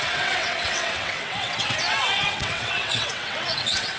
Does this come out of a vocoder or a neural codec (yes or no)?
yes